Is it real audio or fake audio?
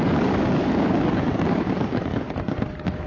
fake